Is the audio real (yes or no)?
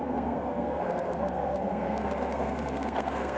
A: no